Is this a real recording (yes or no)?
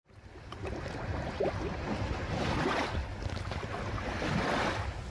yes